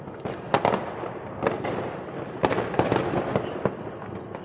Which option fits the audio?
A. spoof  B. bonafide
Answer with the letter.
B